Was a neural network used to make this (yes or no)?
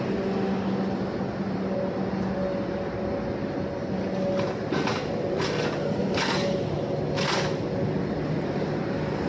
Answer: no